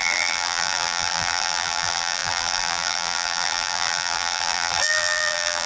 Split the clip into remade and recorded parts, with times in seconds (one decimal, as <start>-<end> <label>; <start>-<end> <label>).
0.0-5.7 remade